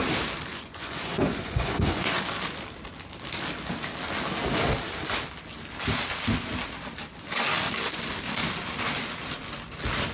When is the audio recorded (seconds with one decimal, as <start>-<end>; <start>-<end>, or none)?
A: 0.0-0.5; 2.2-10.1